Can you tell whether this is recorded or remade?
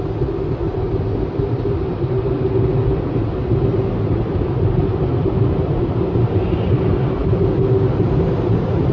recorded